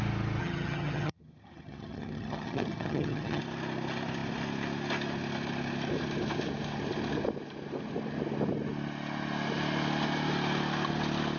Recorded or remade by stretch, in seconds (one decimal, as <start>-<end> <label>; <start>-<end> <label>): 0.0-0.4 recorded; 0.4-3.4 remade; 3.4-11.4 recorded